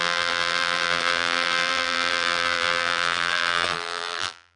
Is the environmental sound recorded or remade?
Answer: remade